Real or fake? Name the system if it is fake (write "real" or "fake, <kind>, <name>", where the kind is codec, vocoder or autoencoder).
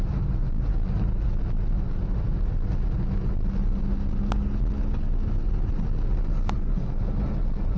real